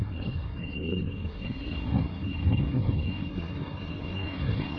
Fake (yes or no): yes